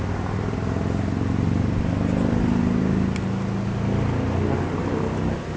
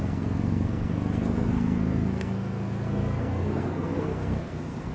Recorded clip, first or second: first